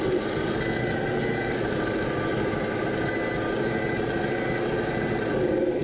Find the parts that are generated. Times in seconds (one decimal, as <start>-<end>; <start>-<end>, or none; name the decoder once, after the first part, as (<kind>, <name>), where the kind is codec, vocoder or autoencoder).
none